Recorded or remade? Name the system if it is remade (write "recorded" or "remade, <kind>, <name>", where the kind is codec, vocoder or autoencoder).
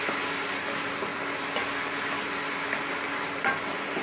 recorded